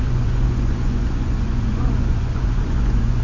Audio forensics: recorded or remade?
remade